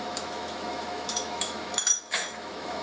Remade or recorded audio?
remade